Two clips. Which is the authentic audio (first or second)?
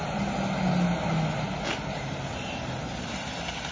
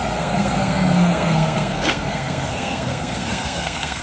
first